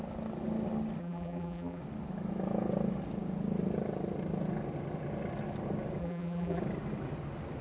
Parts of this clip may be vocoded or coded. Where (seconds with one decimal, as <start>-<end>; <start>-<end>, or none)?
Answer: 1.0-1.8; 6.0-6.6